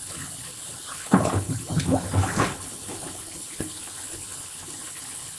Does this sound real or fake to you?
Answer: fake